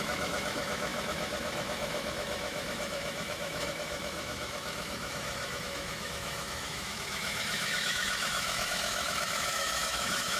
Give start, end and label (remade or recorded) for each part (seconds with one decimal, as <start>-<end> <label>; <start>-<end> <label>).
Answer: 0.0-10.4 remade